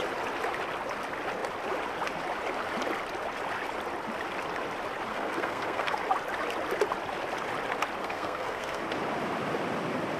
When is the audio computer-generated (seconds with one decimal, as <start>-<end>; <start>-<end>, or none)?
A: 5.1-6.0; 8.0-8.8